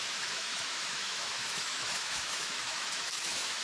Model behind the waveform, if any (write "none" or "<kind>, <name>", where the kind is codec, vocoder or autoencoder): autoencoder, DAC-VAE